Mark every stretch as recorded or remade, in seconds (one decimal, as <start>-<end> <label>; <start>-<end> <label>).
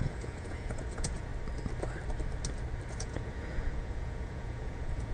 0.0-1.3 remade; 1.3-2.9 recorded; 2.9-5.1 remade